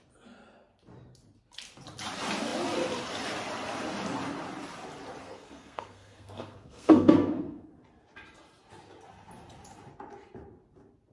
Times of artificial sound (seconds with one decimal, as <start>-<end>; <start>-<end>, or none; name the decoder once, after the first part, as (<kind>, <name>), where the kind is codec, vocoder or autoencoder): 5.2-7.7 (codec, SNAC)

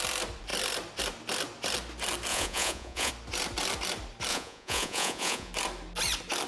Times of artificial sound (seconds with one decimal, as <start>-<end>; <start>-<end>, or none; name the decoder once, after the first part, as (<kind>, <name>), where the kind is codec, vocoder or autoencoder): 2.3-3.1 (vocoder, Vocos); 4.3-5.5